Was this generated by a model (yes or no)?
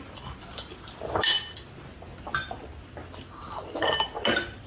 no